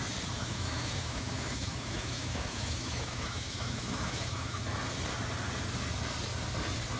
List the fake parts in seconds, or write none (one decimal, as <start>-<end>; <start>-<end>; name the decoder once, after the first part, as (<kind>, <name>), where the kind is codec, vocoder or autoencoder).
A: 0.4-4.6 (autoencoder, DAC-VAE)